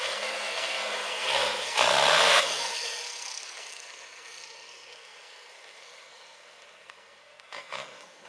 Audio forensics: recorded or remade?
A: remade